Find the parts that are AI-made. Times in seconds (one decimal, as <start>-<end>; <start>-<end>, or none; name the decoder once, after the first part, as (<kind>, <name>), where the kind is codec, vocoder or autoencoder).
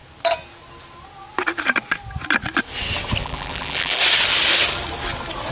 3.2-4.0 (vocoder, BigVGAN v2)